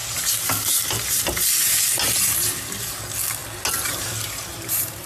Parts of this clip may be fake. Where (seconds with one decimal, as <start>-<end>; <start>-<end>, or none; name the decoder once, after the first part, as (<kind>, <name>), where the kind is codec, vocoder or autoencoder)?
0.0-1.9 (vocoder, BigVGAN v2); 4.5-5.1